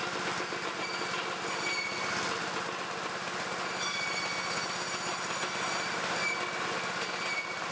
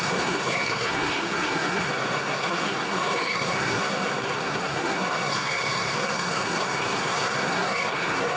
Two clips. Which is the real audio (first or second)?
first